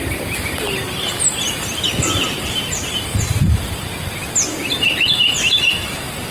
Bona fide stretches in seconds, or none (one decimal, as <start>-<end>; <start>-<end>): 0.0-6.3